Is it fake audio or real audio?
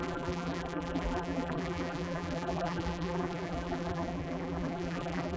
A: fake